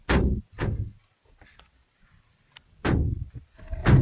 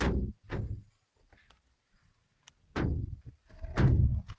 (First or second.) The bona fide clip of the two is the second